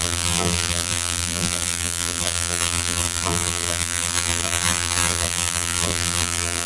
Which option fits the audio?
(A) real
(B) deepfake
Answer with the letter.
B